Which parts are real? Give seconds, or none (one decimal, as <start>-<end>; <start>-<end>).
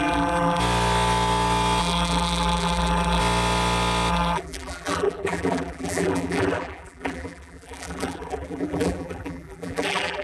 0.6-1.8; 3.2-4.1